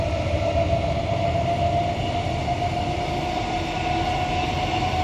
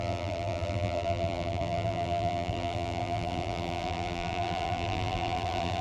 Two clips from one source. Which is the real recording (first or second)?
first